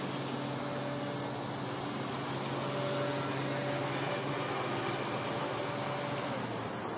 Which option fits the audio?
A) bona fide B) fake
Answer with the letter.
A